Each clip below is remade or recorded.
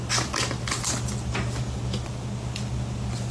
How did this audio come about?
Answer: recorded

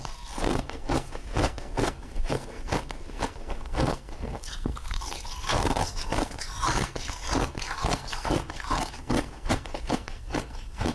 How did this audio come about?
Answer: remade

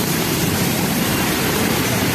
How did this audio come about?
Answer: remade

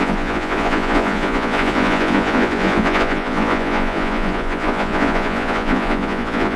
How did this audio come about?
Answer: remade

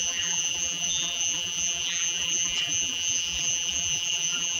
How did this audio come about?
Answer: remade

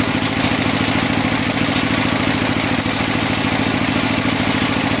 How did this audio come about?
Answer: recorded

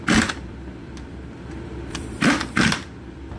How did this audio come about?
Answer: remade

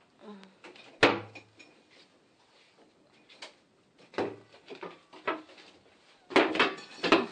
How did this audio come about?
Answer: recorded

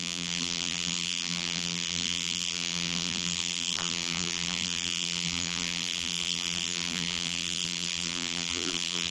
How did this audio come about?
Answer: remade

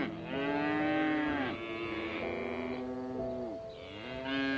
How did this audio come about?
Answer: recorded